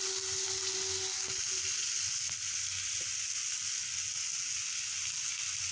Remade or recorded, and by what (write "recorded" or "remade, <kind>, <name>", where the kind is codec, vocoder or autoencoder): recorded